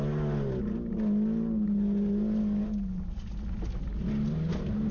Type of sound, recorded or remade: recorded